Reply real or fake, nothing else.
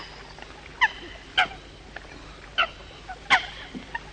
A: real